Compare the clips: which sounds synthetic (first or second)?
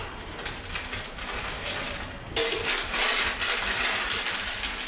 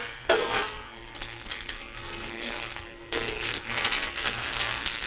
second